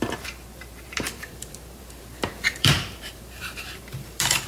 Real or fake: fake